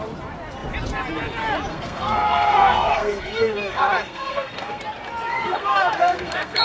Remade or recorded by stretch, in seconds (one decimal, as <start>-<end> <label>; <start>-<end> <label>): 0.0-1.7 recorded; 1.7-4.8 remade; 4.8-5.3 recorded; 5.3-6.6 remade